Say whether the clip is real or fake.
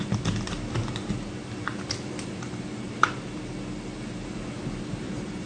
real